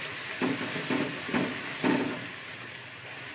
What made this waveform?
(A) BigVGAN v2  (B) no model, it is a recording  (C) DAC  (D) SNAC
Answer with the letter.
A